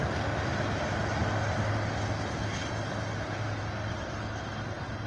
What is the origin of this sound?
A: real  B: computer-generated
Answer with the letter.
A